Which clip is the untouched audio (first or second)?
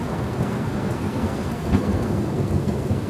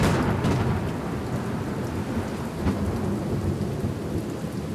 second